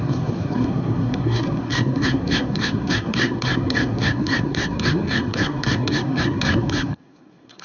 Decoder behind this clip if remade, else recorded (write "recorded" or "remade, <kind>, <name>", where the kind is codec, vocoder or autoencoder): remade, codec, SNAC